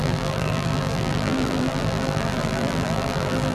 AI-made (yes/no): yes